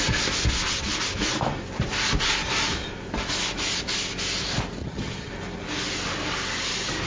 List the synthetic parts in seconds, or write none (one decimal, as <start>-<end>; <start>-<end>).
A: 4.8-5.3